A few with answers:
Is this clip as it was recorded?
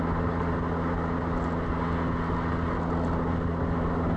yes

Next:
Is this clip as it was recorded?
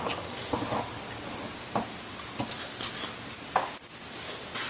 yes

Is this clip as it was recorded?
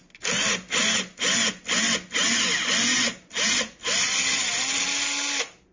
yes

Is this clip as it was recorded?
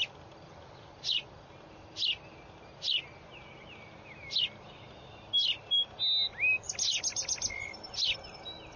yes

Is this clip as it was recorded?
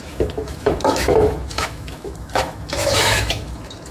no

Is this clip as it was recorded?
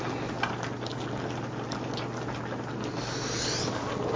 yes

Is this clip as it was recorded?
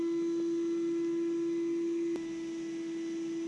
yes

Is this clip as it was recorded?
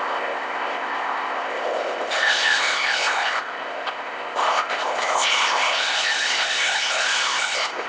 no